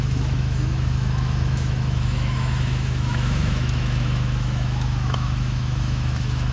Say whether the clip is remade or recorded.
remade